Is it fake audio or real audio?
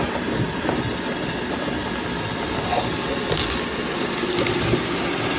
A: real